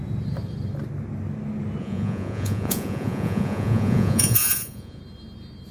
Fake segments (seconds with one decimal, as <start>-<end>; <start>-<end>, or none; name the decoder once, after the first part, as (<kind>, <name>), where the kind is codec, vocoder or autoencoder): 1.8-5.0 (vocoder, Vocos)